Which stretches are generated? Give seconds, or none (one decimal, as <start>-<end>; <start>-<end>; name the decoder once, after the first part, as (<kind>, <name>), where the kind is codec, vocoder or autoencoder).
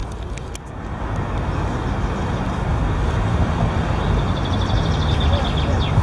none